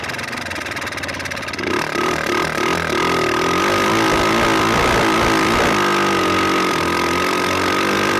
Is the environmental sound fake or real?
real